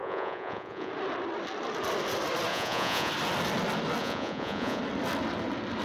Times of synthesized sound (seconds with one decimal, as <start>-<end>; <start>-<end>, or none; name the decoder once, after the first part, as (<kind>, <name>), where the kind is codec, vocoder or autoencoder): 0.0-0.9 (vocoder, Vocos); 2.5-3.1; 4.0-4.8